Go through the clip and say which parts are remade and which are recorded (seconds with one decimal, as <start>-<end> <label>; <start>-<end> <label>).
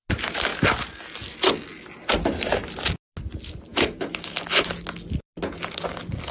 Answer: 0.0-3.7 recorded; 3.7-4.7 remade; 4.7-6.3 recorded